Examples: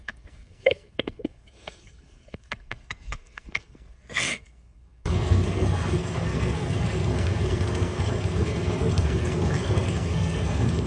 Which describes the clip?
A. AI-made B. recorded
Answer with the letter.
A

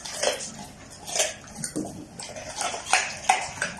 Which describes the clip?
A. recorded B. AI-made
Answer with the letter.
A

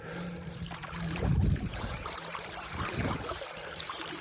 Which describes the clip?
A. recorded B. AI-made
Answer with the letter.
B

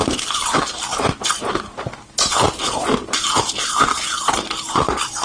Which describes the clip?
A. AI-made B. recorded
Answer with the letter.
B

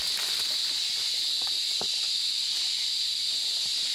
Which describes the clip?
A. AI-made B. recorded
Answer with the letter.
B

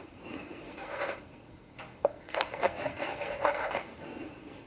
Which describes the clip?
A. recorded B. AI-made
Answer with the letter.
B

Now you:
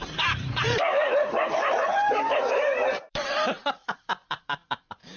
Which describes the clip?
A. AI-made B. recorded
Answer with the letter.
A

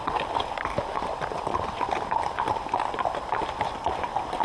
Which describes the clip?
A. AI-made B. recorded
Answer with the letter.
B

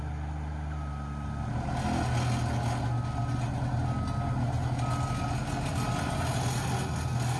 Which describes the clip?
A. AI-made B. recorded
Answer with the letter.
B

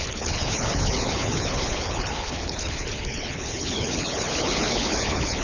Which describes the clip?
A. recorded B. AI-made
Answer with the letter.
B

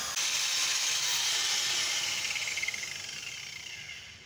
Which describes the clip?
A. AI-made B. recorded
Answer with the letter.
B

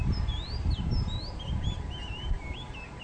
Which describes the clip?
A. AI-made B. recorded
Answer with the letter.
B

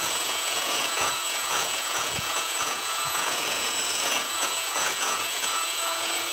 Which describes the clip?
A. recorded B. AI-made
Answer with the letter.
B